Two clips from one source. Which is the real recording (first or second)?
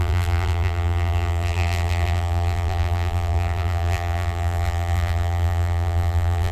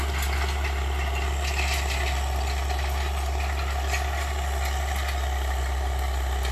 second